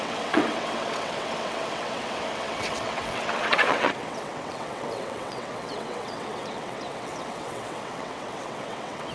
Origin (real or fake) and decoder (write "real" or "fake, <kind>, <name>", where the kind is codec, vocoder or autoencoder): fake, vocoder, WaveNeXt